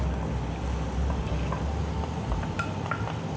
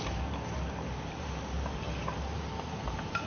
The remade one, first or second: second